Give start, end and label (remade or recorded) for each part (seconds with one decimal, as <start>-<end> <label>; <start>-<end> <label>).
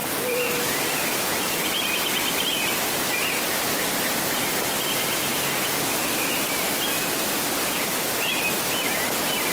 0.0-0.8 remade; 0.8-9.5 recorded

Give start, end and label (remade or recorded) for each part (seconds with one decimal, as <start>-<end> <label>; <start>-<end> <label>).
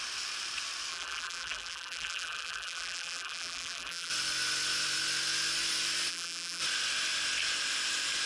0.0-0.9 recorded; 0.9-4.1 remade; 4.1-6.1 recorded; 6.1-6.6 remade; 6.6-8.3 recorded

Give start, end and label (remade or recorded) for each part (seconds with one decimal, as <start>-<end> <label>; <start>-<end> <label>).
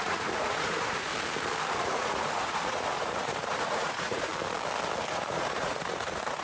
0.0-1.1 remade; 1.1-1.7 recorded; 1.7-4.3 remade; 4.3-5.1 recorded; 5.1-6.4 remade